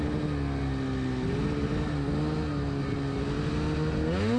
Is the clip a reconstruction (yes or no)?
no